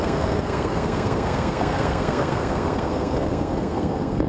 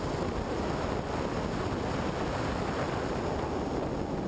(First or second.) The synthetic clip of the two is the first